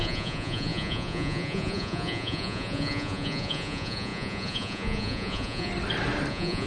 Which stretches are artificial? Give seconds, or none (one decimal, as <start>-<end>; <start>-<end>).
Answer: 0.0-5.7; 6.3-6.7

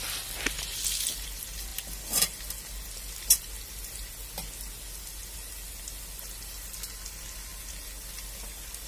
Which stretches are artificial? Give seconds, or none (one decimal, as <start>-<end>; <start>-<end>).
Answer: none